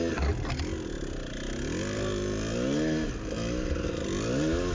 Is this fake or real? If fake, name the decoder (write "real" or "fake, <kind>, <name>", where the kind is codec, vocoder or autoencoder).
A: real